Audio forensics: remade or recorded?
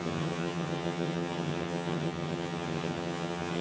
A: remade